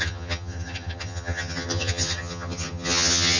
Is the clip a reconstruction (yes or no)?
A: yes